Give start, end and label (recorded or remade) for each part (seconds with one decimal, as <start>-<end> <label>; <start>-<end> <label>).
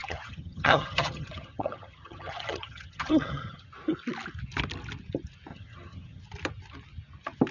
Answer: 0.0-3.7 remade; 3.7-5.5 recorded; 5.5-6.2 remade; 6.2-7.5 recorded